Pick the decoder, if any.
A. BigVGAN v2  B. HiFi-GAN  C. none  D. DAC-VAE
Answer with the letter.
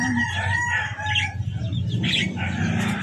C